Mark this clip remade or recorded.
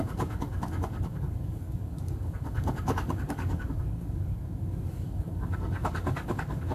remade